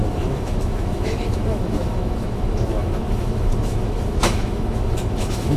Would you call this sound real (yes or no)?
no